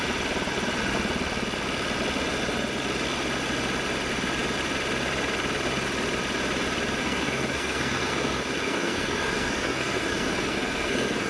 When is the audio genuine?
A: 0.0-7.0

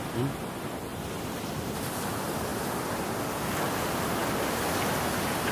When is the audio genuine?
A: 0.0-5.5

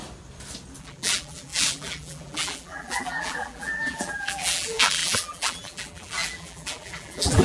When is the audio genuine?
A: 0.0-0.8

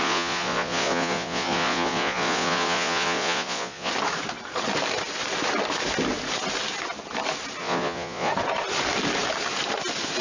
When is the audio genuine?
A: 3.9-7.6; 8.3-10.2